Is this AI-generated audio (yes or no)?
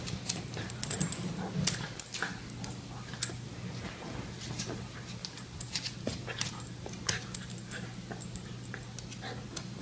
no